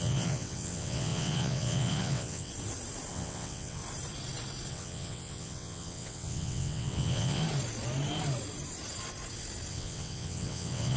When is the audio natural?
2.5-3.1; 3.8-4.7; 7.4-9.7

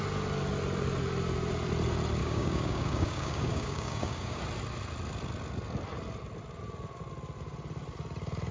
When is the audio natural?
0.0-2.2; 4.4-8.5

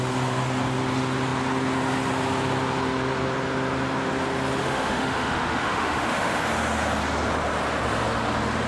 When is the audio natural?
0.0-4.6; 6.4-8.7

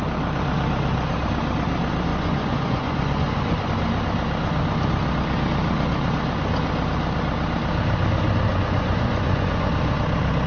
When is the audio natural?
0.0-2.1; 3.7-8.5; 9.7-10.5

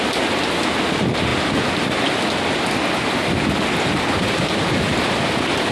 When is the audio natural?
0.0-5.7